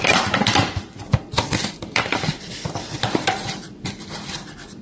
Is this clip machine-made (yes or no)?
yes